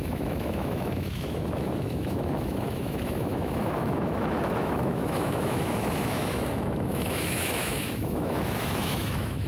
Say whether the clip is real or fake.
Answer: fake